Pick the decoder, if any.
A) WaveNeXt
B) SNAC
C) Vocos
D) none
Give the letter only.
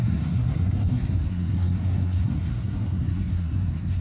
B